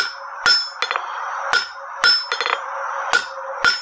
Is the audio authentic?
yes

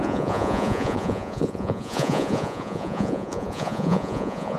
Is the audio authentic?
no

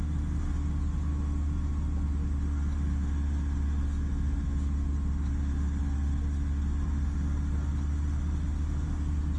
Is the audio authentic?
yes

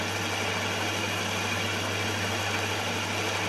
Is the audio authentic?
yes